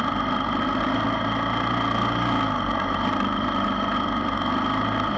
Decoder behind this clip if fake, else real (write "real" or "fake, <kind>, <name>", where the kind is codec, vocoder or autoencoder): real